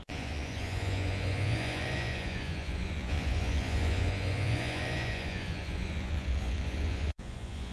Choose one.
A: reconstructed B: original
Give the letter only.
A